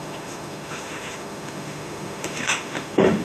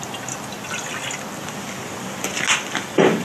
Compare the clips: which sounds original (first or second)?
second